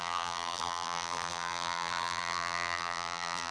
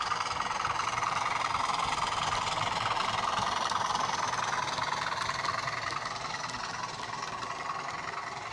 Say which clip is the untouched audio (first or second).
second